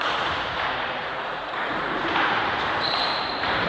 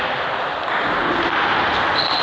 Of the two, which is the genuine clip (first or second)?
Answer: second